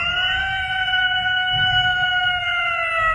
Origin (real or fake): real